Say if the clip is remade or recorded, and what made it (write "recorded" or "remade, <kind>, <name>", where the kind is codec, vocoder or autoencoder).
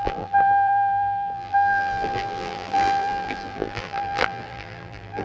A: remade, vocoder, BigVGAN v2